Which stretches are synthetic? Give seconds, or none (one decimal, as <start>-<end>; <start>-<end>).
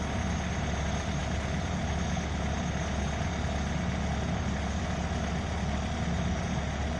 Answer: none